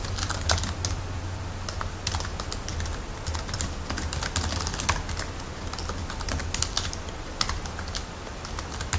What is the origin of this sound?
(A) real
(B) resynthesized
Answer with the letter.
A